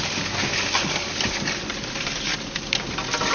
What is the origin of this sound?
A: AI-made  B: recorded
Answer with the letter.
B